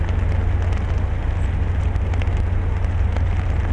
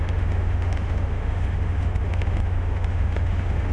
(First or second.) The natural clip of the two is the first